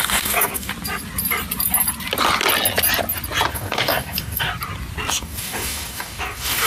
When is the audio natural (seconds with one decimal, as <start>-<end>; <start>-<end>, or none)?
0.7-3.5; 4.5-5.1